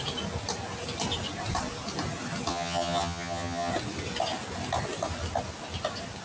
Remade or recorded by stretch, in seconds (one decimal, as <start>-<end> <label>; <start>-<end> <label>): 0.0-2.5 recorded; 2.5-3.7 remade; 3.7-6.2 recorded